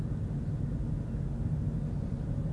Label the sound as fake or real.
real